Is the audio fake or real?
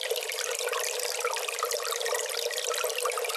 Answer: real